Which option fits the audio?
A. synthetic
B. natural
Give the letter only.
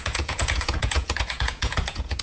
A